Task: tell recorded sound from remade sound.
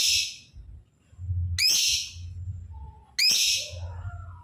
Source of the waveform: recorded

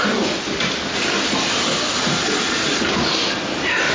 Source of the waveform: recorded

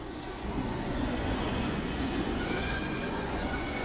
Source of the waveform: remade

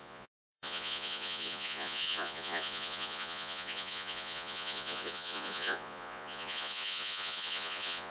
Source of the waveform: remade